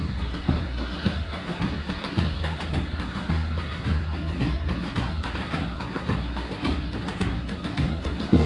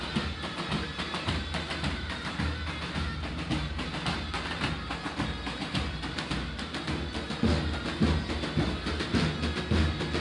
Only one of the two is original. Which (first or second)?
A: second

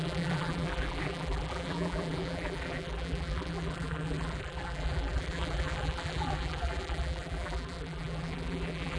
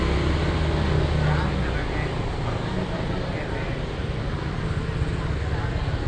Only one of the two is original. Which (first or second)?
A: second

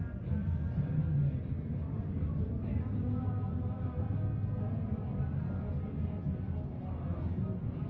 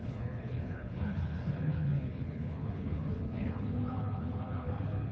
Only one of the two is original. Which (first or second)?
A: first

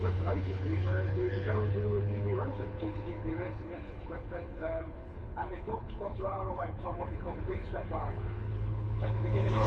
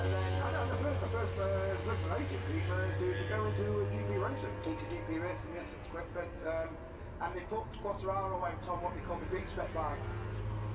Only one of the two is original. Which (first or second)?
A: second